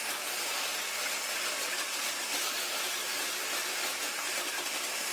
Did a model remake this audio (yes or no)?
no